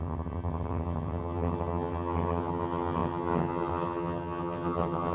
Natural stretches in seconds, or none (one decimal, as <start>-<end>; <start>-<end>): none